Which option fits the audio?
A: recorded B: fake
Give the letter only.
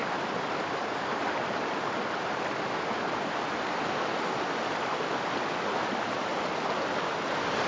A